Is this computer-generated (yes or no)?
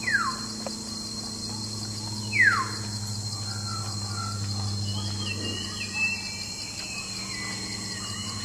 no